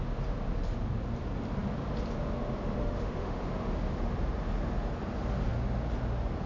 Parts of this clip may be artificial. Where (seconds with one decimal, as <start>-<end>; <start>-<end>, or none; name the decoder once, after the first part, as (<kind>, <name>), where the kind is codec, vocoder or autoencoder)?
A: 2.8-3.4 (autoencoder, DAC-VAE)

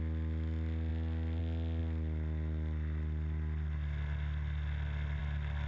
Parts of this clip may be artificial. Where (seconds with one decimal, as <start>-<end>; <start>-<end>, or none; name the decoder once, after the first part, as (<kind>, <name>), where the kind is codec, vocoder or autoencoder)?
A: none

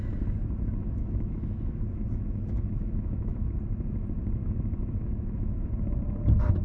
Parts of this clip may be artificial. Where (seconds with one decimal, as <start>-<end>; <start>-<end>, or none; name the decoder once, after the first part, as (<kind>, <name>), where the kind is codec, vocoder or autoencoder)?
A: 0.8-3.6 (autoencoder, DAC-VAE); 4.4-5.7

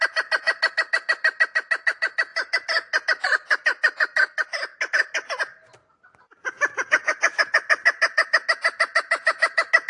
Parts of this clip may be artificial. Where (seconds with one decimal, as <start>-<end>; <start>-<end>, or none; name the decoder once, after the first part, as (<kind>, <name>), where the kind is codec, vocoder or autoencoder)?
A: none

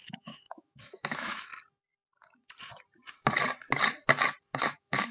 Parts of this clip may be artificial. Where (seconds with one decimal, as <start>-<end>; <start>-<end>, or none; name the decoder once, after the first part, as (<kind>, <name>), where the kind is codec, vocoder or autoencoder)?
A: 0.0-1.5 (autoencoder, DAC-VAE); 4.6-5.1

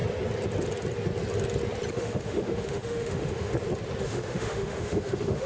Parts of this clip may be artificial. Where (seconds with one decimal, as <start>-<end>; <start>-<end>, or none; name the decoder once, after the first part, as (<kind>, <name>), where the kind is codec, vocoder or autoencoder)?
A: 1.9-3.5 (autoencoder, DAC-VAE); 4.0-5.5

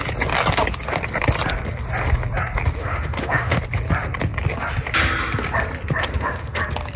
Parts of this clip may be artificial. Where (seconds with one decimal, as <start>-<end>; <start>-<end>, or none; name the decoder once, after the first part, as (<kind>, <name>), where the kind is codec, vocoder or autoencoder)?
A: 2.8-3.6 (autoencoder, DAC-VAE); 6.0-6.6